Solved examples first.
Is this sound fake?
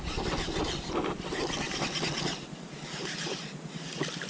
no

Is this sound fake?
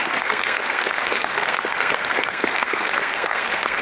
yes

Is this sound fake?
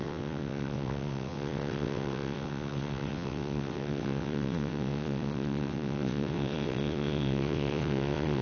yes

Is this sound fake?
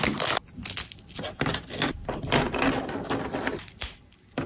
no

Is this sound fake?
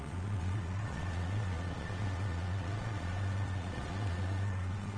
yes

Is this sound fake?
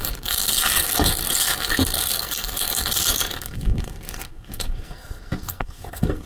yes